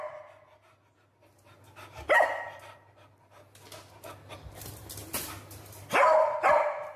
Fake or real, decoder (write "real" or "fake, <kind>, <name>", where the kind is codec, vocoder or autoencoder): real